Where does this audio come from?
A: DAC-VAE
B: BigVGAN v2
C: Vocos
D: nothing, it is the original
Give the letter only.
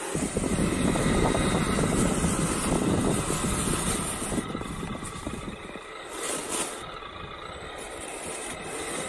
D